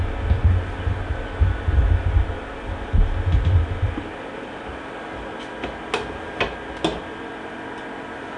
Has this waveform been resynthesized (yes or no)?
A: no